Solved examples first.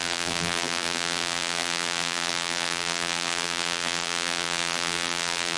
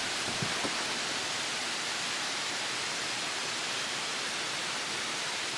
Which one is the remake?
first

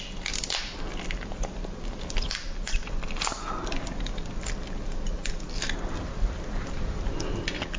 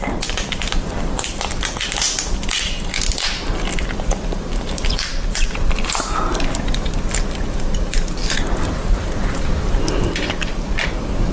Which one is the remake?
second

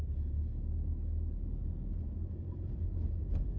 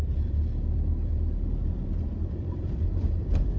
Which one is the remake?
second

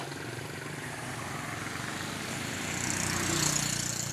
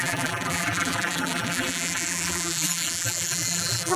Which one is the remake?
second